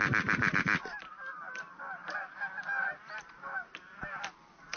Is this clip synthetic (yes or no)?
no